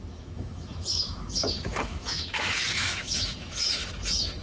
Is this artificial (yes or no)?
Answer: yes